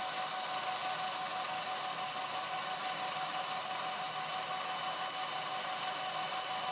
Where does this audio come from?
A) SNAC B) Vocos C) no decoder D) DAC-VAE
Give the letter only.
C